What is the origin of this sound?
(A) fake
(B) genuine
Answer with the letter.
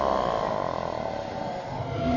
B